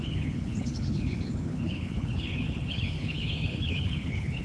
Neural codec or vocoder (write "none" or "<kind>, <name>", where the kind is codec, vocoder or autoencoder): codec, HILCodec